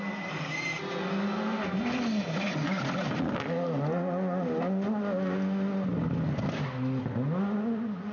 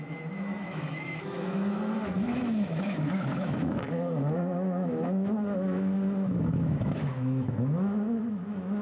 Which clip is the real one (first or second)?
first